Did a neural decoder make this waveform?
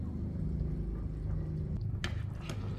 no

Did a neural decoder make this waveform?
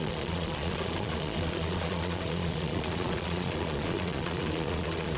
yes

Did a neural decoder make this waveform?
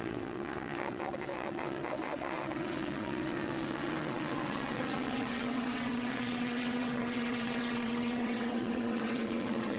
yes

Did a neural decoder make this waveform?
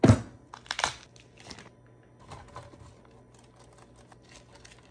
no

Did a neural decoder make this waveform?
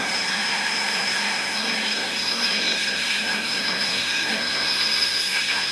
yes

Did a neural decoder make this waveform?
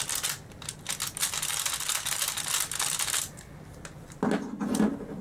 no